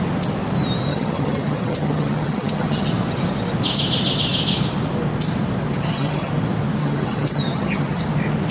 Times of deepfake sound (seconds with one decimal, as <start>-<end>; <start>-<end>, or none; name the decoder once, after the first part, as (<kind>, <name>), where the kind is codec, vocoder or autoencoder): 0.9-2.9 (vocoder, HiFi-GAN); 5.7-6.3; 6.8-8.0